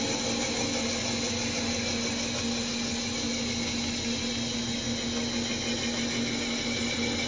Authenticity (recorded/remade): recorded